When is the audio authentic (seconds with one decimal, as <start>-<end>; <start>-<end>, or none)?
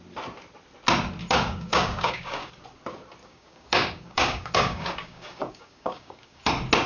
0.0-1.2; 2.5-3.2; 6.5-6.9